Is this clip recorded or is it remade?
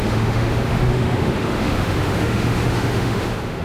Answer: remade